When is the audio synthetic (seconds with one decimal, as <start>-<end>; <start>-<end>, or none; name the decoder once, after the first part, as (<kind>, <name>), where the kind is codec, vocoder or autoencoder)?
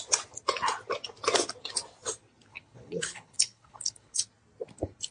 2.5-4.2 (codec, HILCodec)